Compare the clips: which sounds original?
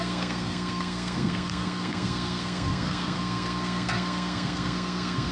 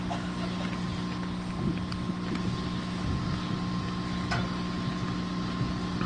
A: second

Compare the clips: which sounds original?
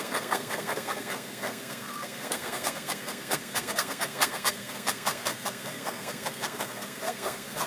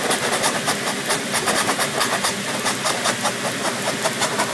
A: second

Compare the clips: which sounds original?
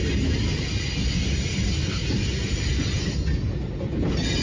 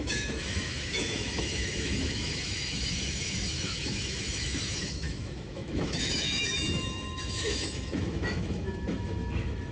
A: first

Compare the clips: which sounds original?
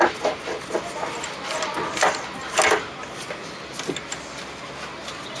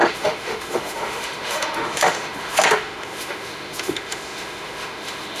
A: first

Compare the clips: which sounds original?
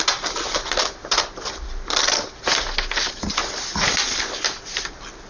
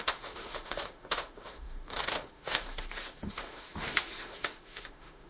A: first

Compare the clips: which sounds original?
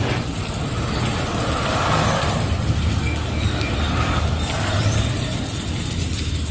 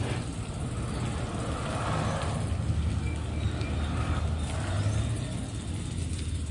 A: second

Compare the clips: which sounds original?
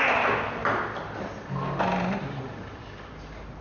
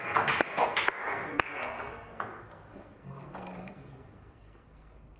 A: first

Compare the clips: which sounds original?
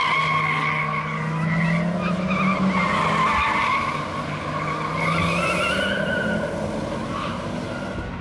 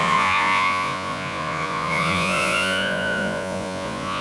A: first